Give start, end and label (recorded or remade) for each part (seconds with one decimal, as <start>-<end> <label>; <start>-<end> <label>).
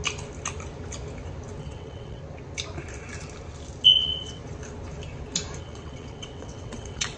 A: 0.0-1.6 recorded; 1.6-2.2 remade; 2.2-4.0 recorded; 4.0-4.4 remade; 4.4-5.6 recorded; 5.6-7.2 remade